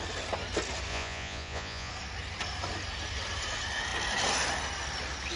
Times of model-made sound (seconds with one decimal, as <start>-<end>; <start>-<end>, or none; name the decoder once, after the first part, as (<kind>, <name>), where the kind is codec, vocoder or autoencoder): 0.9-1.9 (vocoder, Vocos)

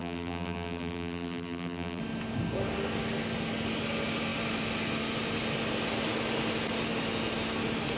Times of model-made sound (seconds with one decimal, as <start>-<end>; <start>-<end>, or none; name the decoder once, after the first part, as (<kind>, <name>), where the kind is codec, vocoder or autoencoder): 0.0-2.0 (vocoder, BigVGAN v2)

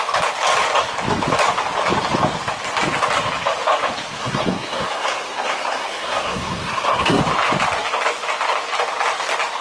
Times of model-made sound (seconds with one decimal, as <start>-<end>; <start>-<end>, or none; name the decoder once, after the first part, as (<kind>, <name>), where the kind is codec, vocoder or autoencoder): 4.2-7.2 (codec, SNAC)

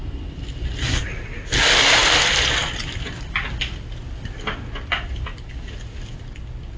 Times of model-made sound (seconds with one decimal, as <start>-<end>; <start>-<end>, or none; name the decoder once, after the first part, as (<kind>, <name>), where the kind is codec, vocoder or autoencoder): 0.0-1.0 (vocoder, BigVGAN v2); 2.0-6.1

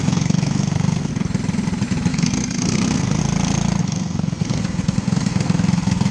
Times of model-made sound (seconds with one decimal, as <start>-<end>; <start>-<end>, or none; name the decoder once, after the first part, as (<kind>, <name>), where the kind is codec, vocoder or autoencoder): 0.0-1.1 (codec, SNAC); 2.1-3.2; 3.8-6.1

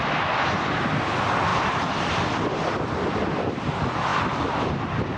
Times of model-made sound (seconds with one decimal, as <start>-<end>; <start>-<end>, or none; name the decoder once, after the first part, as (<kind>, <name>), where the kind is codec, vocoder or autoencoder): 1.5-3.3 (vocoder, BigVGAN v2)

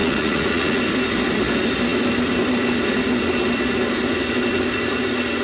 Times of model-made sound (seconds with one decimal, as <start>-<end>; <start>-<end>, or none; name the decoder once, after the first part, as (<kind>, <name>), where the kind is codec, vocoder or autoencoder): 0.0-0.8 (vocoder, Vocos)

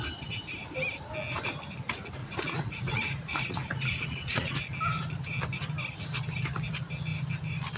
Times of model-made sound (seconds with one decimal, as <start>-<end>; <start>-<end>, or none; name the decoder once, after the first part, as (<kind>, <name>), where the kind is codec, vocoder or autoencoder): 2.2-4.6 (vocoder, Vocos)